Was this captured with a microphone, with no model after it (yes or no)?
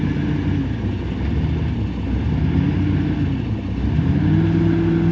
yes